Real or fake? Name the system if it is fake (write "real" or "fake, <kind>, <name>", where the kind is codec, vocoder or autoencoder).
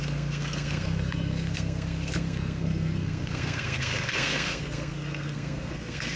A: fake, codec, SNAC